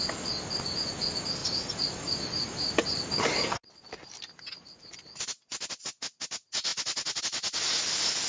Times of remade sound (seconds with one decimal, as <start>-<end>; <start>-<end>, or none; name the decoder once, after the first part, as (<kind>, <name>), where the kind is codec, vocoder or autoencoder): 1.4-4.2 (vocoder, BigVGAN v2)